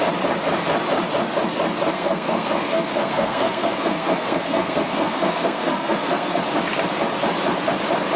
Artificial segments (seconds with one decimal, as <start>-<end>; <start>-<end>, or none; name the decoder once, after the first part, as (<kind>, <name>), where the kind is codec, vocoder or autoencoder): 1.9-6.4 (codec, SNAC)